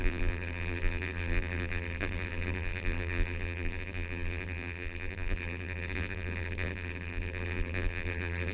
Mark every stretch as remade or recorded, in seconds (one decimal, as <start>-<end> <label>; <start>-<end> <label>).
0.0-8.5 remade